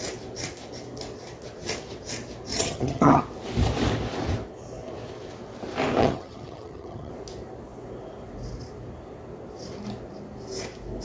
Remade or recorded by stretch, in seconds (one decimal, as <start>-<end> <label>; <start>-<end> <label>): 0.0-2.5 recorded; 2.5-3.2 remade; 3.2-6.0 recorded; 6.0-7.1 remade; 7.1-11.0 recorded